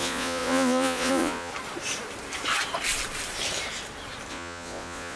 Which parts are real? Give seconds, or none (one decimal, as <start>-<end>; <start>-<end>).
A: 1.5-4.3